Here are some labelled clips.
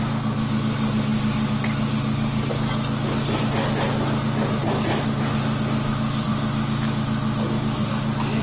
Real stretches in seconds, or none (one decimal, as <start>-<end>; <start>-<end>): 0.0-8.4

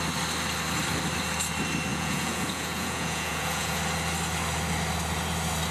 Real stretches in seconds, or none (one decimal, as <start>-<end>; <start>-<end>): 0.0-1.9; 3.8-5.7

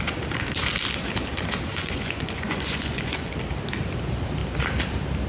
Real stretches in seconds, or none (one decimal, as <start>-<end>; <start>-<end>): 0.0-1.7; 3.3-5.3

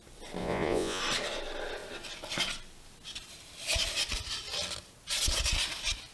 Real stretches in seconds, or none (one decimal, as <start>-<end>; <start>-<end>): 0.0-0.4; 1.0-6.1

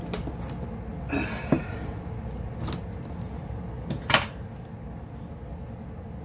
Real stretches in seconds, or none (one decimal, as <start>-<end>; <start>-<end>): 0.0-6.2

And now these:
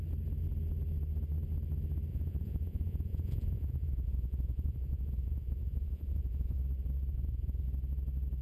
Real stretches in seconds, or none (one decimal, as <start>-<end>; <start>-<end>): 0.0-2.1; 6.6-7.1; 7.6-8.4

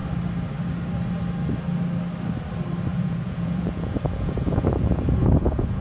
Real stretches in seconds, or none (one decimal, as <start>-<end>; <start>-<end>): 0.0-2.9